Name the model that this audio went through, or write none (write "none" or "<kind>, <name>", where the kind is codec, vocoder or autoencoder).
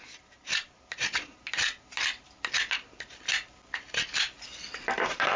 none